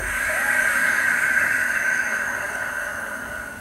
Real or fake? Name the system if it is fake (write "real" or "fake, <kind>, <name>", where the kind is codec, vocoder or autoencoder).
fake, codec, DAC